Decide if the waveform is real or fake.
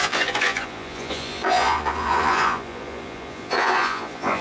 fake